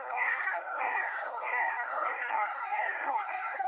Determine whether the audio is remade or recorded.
remade